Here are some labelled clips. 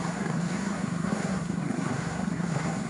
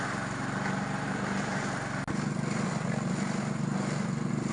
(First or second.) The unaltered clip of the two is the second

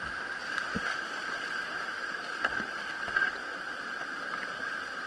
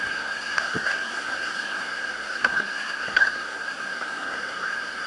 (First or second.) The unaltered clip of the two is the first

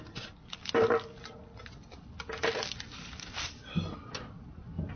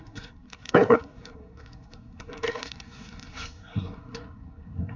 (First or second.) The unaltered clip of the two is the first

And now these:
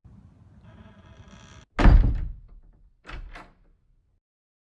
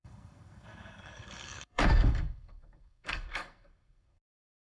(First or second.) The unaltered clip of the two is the first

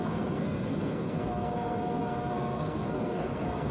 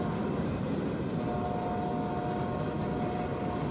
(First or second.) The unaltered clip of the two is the second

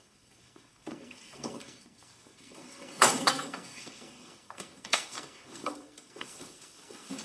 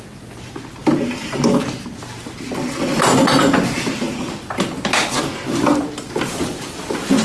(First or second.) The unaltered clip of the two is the second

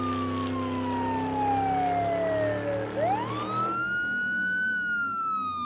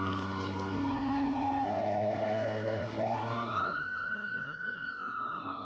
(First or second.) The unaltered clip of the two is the first